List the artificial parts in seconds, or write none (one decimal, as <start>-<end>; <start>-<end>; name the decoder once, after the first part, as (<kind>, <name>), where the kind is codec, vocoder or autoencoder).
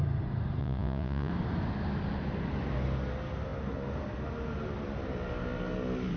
0.6-1.3 (vocoder, Vocos)